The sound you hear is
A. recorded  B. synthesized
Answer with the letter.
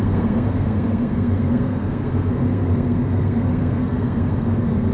B